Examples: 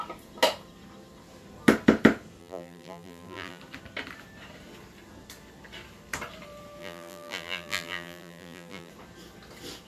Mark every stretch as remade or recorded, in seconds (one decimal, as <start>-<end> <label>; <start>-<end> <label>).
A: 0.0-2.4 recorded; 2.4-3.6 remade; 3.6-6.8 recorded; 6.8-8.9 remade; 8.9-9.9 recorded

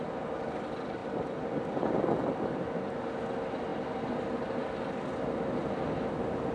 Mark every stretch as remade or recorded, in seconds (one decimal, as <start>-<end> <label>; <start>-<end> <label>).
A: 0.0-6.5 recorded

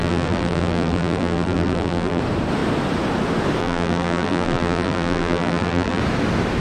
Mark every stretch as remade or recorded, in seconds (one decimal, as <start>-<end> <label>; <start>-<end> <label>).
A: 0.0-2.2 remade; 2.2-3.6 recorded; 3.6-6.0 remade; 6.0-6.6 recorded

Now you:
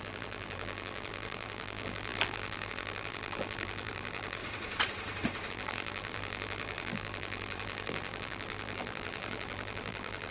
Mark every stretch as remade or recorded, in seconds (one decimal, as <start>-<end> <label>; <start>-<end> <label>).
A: 0.0-4.4 remade; 4.4-5.5 recorded; 5.5-10.3 remade

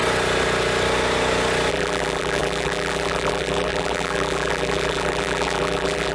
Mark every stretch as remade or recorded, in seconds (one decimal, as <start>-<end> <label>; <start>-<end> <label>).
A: 0.0-1.7 recorded; 1.7-6.1 remade

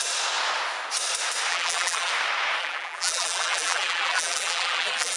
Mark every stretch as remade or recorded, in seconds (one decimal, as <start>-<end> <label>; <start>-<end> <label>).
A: 0.0-1.5 recorded; 1.5-2.1 remade; 2.1-2.6 recorded; 2.6-5.2 remade